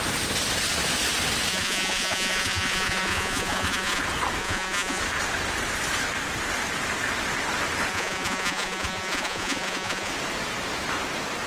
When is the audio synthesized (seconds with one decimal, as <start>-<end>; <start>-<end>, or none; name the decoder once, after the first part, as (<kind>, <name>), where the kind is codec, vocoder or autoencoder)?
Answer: 1.5-4.0 (vocoder, Vocos); 4.4-5.0; 7.9-10.1